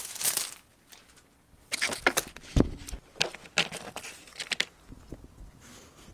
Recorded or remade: recorded